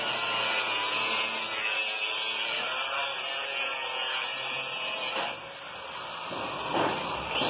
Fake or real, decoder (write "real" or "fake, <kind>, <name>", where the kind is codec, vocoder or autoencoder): real